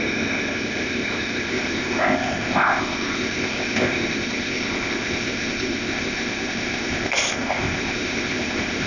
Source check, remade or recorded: remade